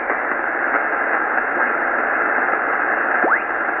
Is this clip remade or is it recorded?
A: recorded